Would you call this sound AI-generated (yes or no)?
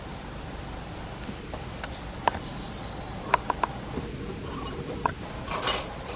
no